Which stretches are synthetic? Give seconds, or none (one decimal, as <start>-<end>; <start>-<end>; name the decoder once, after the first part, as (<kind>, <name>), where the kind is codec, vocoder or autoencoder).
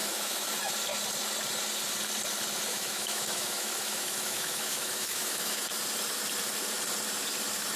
0.0-0.6 (autoencoder, DAC-VAE); 2.7-5.6